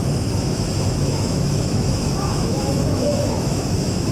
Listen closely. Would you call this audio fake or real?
fake